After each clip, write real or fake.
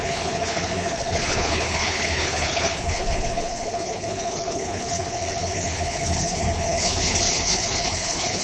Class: fake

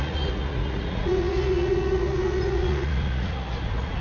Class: fake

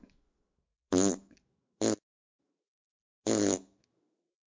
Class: fake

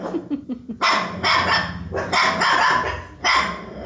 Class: real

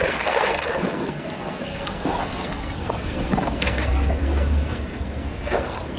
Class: fake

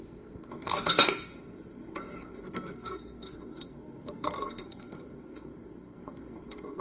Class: fake